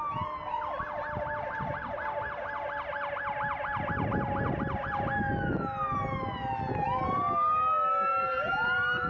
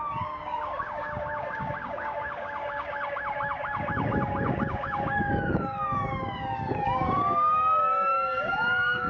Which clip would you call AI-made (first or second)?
second